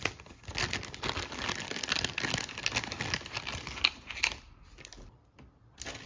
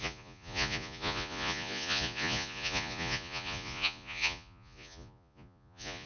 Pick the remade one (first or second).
second